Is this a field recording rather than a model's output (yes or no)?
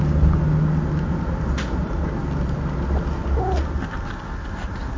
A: yes